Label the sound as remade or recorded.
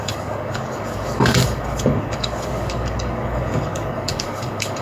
remade